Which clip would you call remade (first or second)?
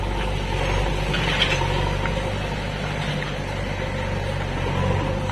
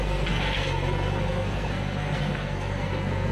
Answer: second